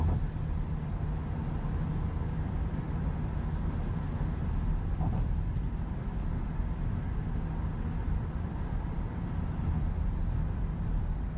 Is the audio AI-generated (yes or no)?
no